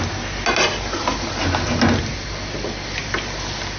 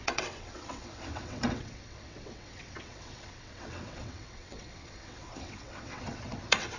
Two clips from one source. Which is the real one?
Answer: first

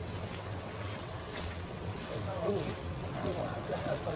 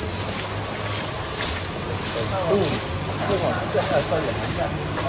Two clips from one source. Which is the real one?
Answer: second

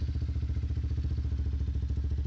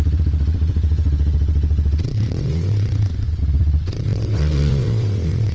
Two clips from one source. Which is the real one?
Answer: first